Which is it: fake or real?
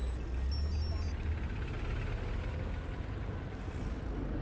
real